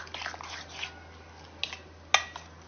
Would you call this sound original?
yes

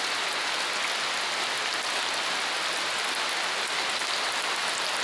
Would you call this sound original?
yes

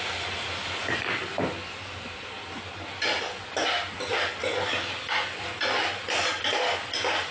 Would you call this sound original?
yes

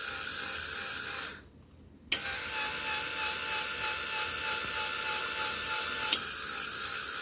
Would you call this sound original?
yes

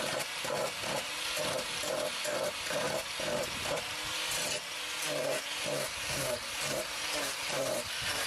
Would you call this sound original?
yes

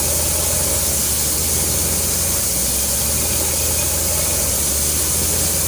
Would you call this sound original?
yes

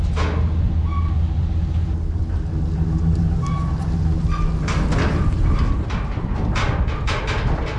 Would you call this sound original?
yes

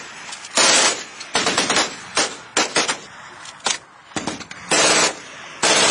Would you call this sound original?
yes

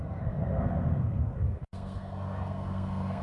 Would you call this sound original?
no